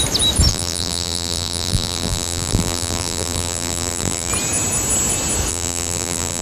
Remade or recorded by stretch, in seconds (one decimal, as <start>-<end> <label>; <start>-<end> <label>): 0.0-0.5 recorded; 0.5-4.3 remade; 4.3-5.5 recorded; 5.5-6.4 remade